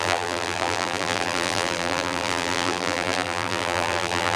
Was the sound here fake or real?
fake